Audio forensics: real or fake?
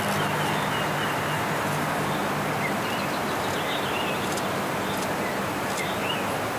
real